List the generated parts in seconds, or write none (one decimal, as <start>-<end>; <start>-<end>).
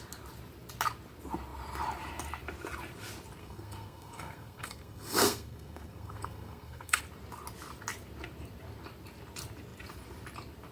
3.4-7.0